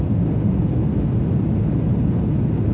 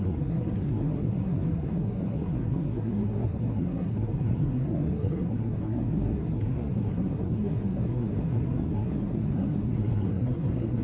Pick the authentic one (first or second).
first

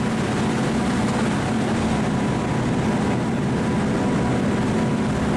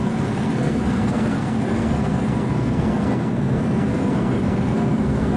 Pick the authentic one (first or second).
first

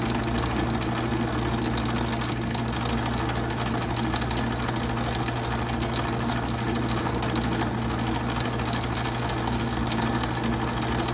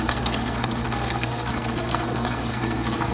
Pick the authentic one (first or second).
first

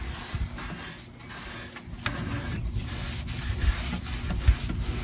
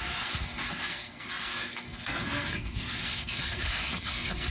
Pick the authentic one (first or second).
first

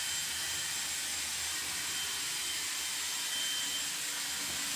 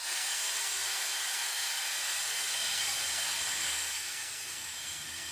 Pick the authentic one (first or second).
first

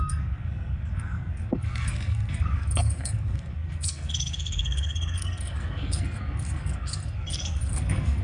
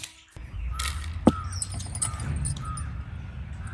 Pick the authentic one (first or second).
second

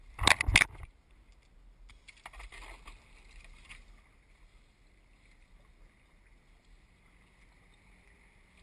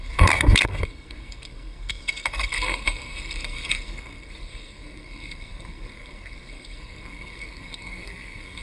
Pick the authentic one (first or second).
first